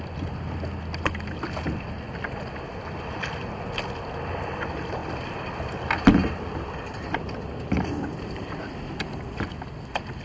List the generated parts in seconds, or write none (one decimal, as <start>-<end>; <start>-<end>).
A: none